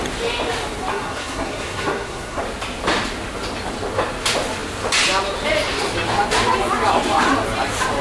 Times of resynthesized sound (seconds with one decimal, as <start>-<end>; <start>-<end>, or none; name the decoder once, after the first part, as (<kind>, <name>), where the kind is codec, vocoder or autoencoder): 0.9-2.4 (codec, SNAC)